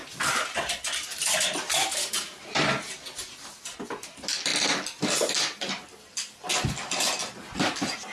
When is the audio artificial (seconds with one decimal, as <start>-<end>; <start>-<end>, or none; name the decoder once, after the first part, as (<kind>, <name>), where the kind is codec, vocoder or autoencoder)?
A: none